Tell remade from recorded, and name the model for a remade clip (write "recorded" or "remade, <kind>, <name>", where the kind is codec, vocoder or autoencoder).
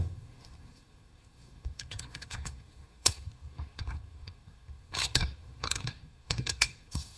remade, codec, SNAC